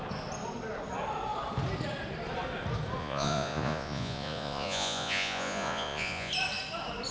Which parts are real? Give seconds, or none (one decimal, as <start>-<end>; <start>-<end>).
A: 0.0-3.0; 6.3-7.1